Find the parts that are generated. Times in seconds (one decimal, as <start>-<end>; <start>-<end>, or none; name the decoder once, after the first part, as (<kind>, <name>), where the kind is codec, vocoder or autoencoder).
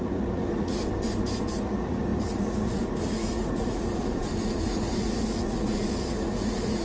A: 0.0-0.8 (vocoder, Vocos); 1.4-6.8